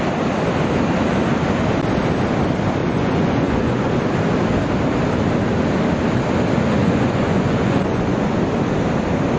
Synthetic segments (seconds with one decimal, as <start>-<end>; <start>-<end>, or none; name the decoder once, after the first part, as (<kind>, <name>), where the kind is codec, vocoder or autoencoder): 2.8-3.9 (vocoder, Vocos); 6.8-8.4